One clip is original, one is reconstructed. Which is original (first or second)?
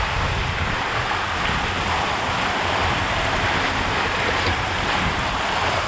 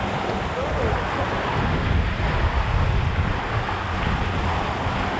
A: second